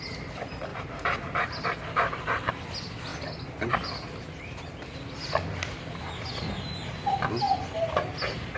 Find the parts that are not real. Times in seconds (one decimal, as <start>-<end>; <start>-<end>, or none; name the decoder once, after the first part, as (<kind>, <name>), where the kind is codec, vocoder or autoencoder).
0.7-2.5 (vocoder, BigVGAN v2)